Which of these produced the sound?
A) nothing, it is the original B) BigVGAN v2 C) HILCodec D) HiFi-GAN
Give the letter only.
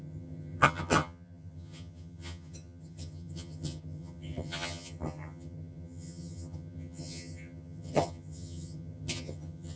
D